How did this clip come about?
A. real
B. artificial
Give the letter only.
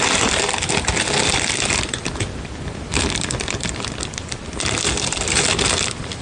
A